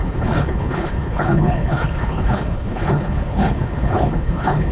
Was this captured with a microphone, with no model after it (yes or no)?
no